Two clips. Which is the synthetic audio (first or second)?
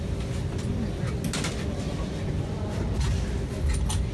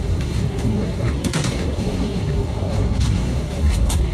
second